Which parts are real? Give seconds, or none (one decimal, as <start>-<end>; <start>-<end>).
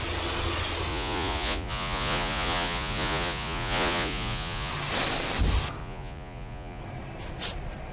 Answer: 0.0-0.9; 4.7-5.8; 6.8-7.9